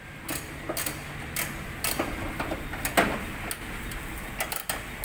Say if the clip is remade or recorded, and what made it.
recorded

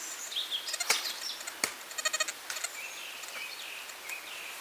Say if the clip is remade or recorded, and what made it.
recorded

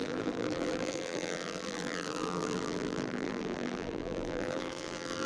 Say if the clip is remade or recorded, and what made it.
remade, vocoder, BigVGAN v2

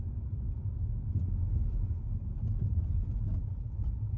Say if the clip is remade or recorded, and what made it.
recorded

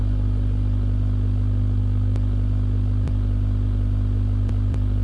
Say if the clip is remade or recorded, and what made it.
remade, vocoder, BigVGAN v2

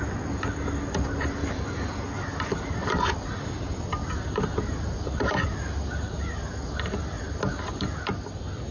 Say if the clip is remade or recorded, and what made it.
recorded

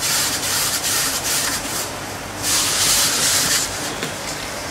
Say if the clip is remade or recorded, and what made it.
remade, vocoder, BigVGAN v2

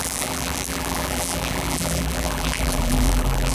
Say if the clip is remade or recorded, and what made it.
remade, vocoder, BigVGAN v2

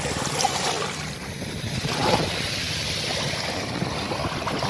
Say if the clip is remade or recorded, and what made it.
recorded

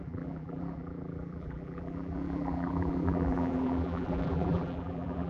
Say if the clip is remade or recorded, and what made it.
remade, vocoder, BigVGAN v2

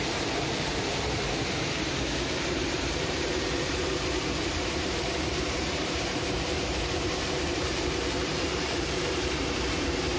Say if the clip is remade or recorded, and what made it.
remade, vocoder, BigVGAN v2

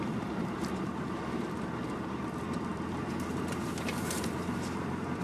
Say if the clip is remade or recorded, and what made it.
remade, vocoder, BigVGAN v2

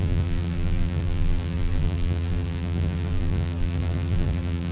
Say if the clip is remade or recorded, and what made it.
remade, vocoder, BigVGAN v2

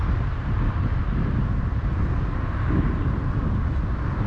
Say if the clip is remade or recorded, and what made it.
recorded